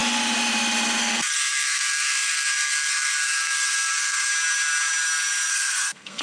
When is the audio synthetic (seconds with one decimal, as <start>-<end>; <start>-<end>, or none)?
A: 1.0-4.3; 5.5-6.2